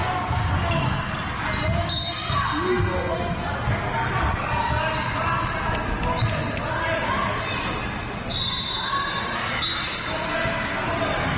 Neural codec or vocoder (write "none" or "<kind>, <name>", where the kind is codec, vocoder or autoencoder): none